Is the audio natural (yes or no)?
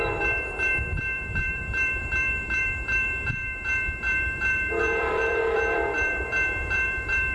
no